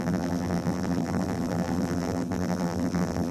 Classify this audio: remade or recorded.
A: remade